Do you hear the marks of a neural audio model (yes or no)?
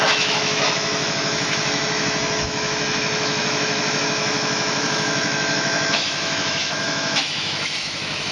yes